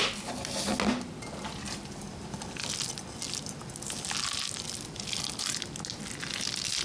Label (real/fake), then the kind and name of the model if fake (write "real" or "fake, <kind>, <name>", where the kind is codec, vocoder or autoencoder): real